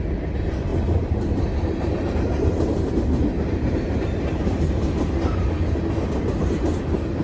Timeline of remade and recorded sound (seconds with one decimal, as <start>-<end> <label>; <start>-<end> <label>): 0.0-0.7 recorded; 0.7-4.6 remade; 4.6-7.2 recorded